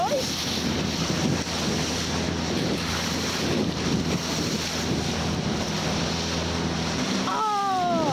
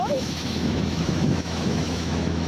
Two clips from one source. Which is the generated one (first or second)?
second